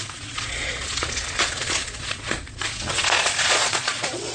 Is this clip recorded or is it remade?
remade